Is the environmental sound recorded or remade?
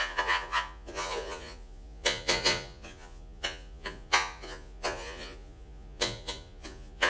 remade